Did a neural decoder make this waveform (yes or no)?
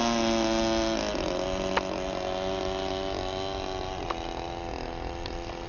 no